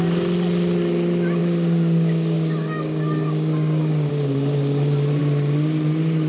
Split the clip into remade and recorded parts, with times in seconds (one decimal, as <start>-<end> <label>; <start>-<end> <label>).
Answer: 0.0-1.4 recorded; 1.4-4.1 remade; 4.1-6.3 recorded